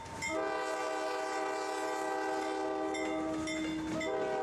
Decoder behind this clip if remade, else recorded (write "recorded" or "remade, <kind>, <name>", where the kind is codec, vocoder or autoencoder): recorded